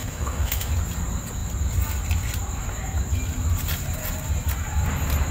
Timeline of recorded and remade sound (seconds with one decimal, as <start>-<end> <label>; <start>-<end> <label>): 0.0-0.7 remade; 0.7-5.3 recorded